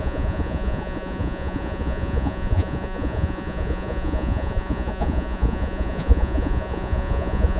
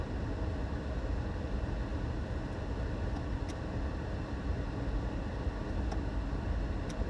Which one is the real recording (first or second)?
second